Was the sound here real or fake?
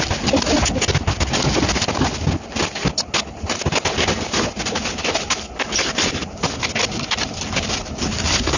real